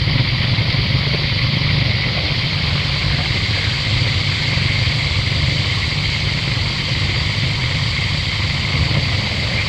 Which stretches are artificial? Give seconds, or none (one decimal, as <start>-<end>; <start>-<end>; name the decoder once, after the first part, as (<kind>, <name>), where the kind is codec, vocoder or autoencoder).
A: 0.0-9.7 (vocoder, BigVGAN v2)